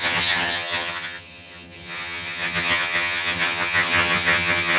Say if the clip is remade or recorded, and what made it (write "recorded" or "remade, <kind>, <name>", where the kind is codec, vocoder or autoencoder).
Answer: remade, vocoder, HiFi-GAN